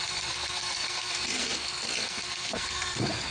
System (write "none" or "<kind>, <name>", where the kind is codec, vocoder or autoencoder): codec, SNAC